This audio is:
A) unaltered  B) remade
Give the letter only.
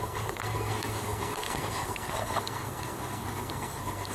B